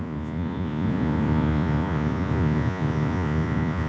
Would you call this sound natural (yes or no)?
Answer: no